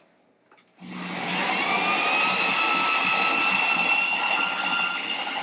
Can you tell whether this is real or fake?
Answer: real